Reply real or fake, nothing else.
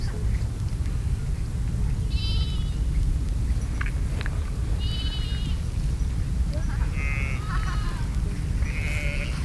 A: real